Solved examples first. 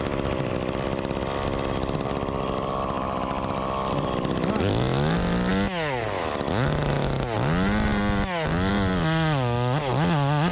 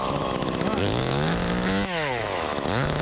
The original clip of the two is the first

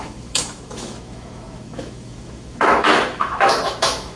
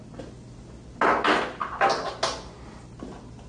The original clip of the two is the second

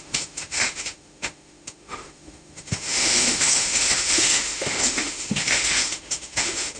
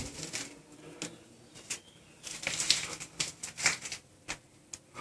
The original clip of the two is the second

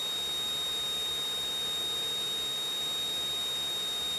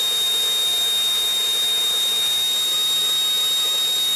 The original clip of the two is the first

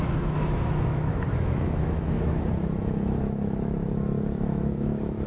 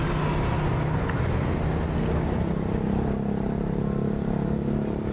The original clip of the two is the second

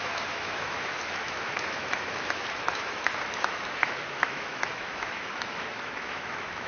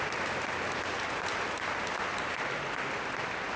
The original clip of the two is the second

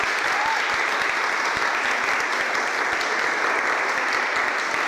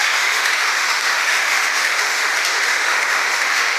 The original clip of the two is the first